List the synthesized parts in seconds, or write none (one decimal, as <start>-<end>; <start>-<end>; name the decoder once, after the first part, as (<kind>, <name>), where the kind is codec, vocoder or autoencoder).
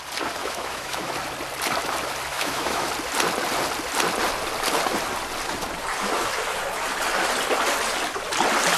0.4-1.1 (autoencoder, DAC-VAE); 2.3-2.9